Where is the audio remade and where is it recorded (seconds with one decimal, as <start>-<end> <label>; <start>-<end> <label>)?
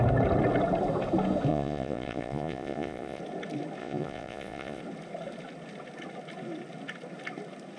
0.0-1.5 recorded; 1.5-3.2 remade; 3.2-3.8 recorded; 3.8-4.8 remade; 4.8-7.8 recorded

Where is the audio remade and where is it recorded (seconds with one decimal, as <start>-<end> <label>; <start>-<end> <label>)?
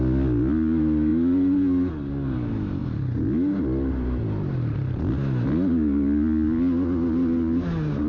0.0-8.1 recorded